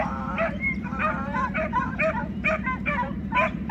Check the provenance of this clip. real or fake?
fake